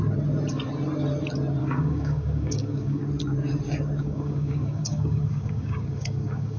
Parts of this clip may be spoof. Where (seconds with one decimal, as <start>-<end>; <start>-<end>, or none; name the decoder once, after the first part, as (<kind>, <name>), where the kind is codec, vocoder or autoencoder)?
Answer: 1.6-3.0 (codec, DAC); 4.0-6.6